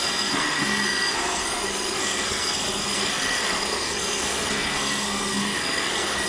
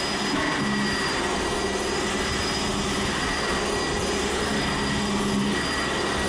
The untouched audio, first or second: second